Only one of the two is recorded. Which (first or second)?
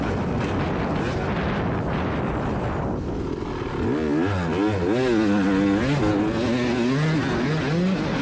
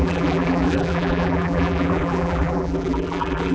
first